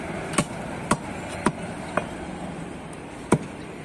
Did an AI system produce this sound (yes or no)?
yes